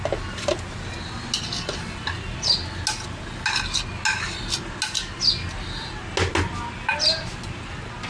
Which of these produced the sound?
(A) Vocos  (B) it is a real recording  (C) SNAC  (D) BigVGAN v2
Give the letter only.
B